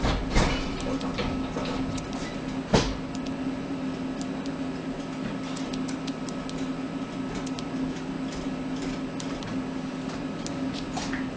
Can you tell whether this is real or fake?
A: real